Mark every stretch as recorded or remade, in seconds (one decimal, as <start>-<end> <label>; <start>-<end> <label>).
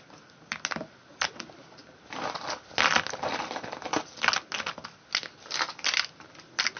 0.0-6.8 recorded